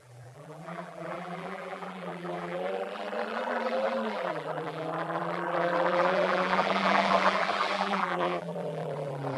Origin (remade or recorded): remade